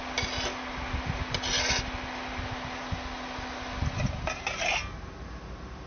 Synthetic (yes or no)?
no